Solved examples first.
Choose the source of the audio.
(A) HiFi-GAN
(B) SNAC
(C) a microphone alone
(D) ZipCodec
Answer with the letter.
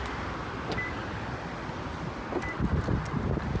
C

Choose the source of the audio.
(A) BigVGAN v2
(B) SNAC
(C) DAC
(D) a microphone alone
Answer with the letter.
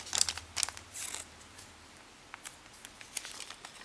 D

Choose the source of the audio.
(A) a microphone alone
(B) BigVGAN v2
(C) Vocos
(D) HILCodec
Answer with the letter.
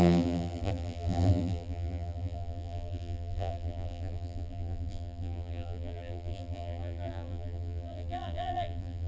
B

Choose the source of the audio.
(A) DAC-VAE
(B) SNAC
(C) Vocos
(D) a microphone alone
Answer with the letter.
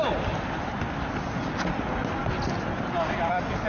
D